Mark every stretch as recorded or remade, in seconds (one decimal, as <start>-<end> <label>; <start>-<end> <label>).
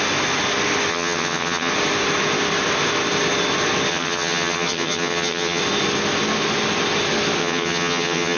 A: 0.0-0.9 recorded; 0.9-1.7 remade; 1.7-3.9 recorded; 3.9-5.6 remade; 5.6-7.4 recorded; 7.4-8.4 remade